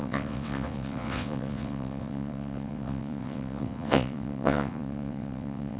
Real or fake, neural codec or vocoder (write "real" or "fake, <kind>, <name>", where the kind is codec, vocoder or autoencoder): fake, vocoder, WaveNeXt